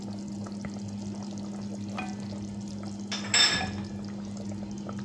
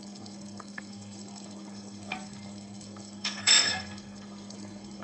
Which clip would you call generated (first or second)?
second